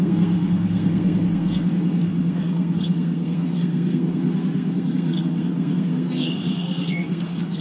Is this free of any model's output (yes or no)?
no